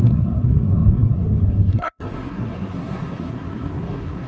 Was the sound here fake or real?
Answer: fake